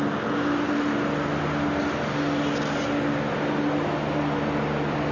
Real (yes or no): yes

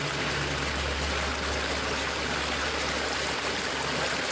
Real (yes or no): yes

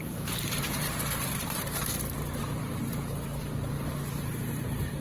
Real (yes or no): no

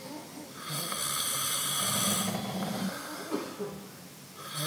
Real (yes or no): yes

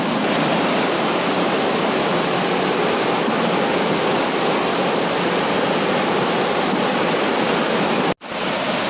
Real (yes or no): yes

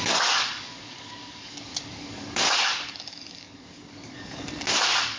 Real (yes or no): no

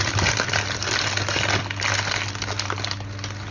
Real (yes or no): yes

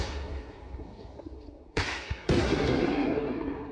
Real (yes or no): no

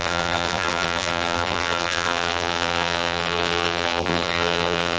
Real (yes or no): no